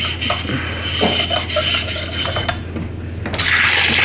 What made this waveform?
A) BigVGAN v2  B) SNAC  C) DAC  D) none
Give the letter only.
D